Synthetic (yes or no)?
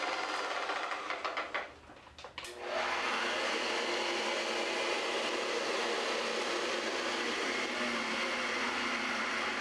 no